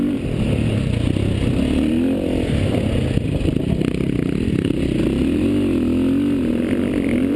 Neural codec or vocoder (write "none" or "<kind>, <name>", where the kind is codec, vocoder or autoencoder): none